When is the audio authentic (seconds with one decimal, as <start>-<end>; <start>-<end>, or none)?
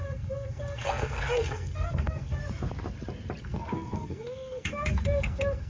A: 2.4-3.4